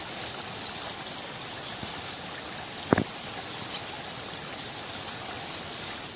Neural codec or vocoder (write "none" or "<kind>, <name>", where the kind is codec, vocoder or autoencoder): none